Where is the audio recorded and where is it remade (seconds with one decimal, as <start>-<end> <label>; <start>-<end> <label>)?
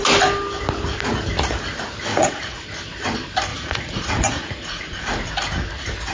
0.0-2.1 recorded; 2.1-2.7 remade; 2.7-3.5 recorded; 3.5-5.3 remade; 5.3-6.1 recorded